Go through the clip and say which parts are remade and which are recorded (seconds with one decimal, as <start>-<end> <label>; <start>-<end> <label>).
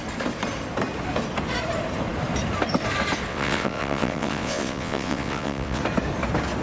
0.0-3.3 recorded; 3.3-5.8 remade; 5.8-6.6 recorded